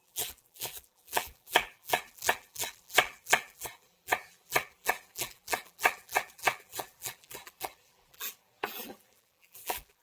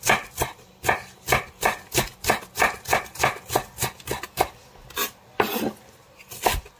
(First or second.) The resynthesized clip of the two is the first